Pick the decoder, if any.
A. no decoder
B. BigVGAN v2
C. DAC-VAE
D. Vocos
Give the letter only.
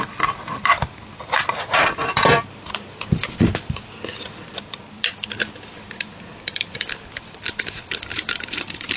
B